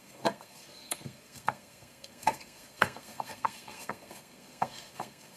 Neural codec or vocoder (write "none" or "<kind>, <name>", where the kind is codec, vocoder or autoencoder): codec, SNAC